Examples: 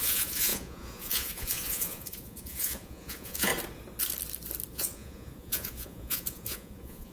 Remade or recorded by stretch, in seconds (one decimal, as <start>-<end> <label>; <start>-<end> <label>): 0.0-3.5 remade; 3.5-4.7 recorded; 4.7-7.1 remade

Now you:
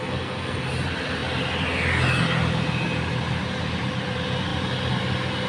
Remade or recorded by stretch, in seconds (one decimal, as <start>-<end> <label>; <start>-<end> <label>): 0.0-0.7 remade; 0.7-5.5 recorded

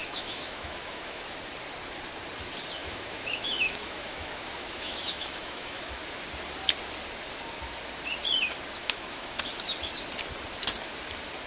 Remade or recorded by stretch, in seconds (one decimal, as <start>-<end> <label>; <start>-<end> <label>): 0.0-1.4 remade; 1.4-2.8 recorded; 2.8-5.9 remade; 5.9-8.8 recorded; 8.8-9.4 remade; 9.4-11.5 recorded

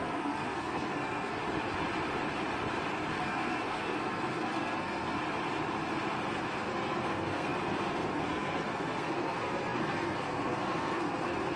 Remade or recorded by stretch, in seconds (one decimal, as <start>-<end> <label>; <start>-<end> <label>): 0.0-1.4 remade; 1.4-3.2 recorded; 3.2-5.2 remade; 5.2-6.3 recorded; 6.3-11.6 remade

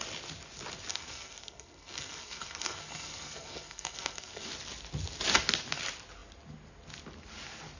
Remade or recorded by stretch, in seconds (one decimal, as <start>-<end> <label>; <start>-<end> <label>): 0.0-0.9 recorded; 0.9-4.5 remade; 4.5-7.8 recorded

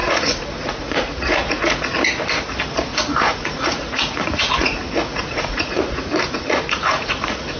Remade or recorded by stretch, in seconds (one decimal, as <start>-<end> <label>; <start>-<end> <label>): 0.0-1.8 remade; 1.8-2.9 recorded; 2.9-7.6 remade

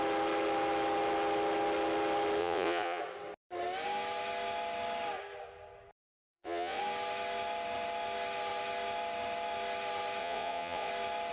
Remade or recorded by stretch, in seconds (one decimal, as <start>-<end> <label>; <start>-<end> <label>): 0.0-2.4 recorded; 2.4-3.0 remade; 3.0-6.1 recorded; 6.1-6.8 remade; 6.8-10.2 recorded; 10.2-10.9 remade; 10.9-11.3 recorded